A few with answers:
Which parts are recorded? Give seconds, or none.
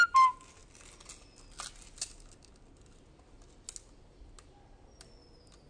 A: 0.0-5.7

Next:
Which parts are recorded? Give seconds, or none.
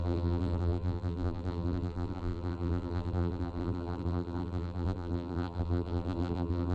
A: none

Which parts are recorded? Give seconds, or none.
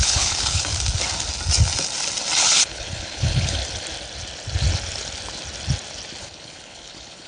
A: 0.7-2.4; 3.6-6.2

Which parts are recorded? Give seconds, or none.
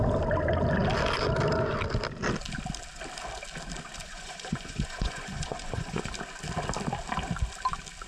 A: 0.0-4.0; 6.1-8.1